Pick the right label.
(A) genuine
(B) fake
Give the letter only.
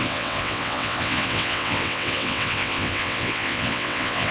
B